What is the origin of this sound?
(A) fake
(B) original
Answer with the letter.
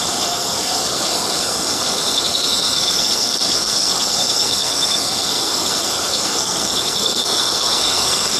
A